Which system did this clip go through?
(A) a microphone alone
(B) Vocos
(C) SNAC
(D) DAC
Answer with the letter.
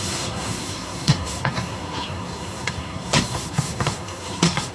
C